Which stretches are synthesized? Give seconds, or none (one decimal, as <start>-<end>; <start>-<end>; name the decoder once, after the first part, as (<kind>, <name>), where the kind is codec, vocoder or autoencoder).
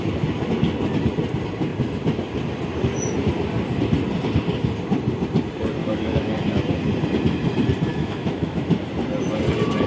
5.8-6.3 (autoencoder, DAC-VAE); 7.9-8.8